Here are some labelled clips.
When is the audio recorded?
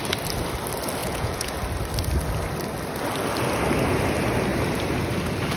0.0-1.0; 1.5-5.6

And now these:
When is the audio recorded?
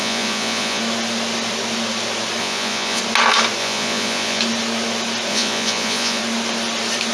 0.8-2.4; 3.0-3.6; 4.4-5.3; 6.2-7.1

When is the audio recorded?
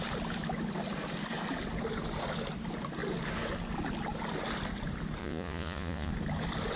0.0-5.2; 6.1-6.8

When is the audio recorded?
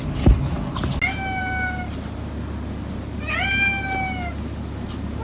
0.0-5.2